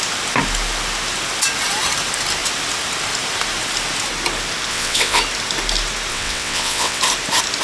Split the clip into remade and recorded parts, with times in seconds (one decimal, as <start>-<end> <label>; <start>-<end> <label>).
0.0-4.7 recorded; 4.7-5.2 remade; 5.2-6.1 recorded; 6.1-7.0 remade; 7.0-7.6 recorded